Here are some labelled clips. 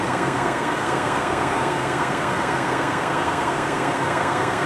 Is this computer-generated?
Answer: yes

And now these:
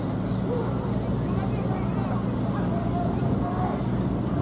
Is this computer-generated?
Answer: no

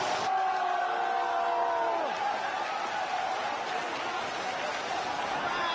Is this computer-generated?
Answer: no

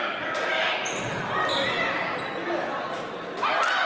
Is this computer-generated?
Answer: no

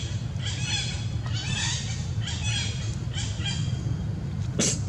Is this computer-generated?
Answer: no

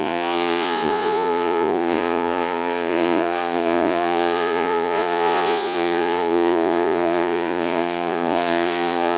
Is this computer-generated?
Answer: yes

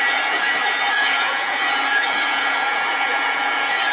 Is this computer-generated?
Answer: yes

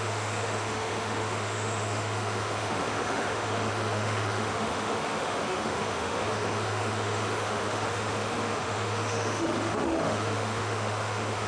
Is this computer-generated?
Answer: yes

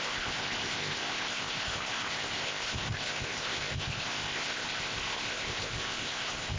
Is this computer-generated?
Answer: yes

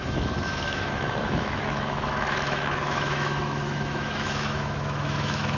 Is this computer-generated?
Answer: yes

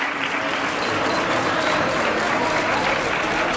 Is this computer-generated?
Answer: no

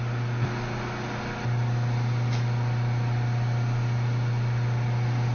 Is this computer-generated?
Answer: no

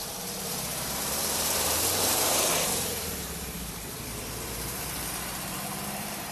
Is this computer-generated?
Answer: yes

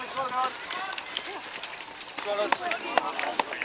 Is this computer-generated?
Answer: no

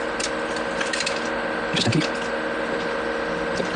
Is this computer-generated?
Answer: no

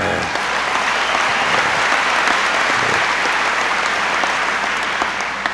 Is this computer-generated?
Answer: no